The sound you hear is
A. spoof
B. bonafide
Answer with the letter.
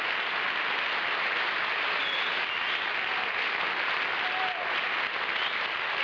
B